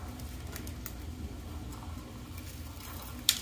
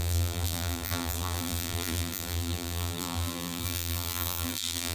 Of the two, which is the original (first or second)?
first